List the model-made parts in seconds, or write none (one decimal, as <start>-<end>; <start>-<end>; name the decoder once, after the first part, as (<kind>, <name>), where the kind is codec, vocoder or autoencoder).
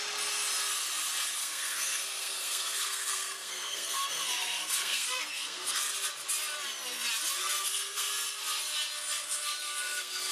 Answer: 1.4-5.9 (codec, SNAC); 7.4-8.1; 9.2-10.3